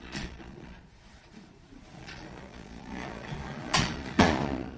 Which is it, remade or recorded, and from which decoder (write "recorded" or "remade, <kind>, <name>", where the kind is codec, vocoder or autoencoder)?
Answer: remade, vocoder, Vocos